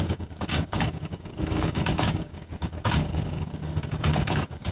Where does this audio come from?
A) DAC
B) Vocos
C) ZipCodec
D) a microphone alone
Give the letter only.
A